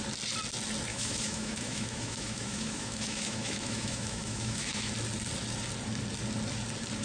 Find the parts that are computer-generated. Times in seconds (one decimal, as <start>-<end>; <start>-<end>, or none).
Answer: 0.9-4.9